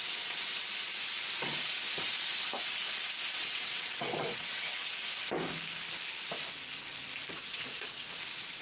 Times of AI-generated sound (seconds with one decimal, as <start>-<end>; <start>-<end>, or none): 0.0-0.6; 3.4-5.1; 7.3-8.6